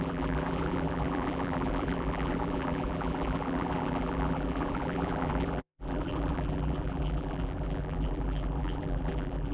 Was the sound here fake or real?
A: fake